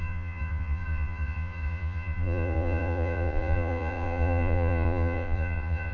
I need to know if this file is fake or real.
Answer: fake